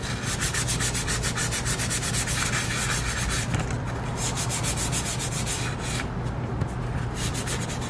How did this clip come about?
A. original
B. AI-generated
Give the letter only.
A